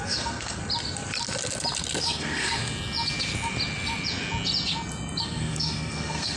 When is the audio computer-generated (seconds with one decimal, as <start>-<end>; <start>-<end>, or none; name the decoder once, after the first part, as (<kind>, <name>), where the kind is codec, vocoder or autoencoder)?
0.0-0.6 (codec, SNAC); 2.0-2.6; 5.2-6.4